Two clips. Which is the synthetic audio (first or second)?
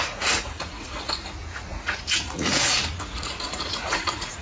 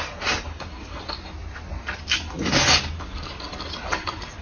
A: first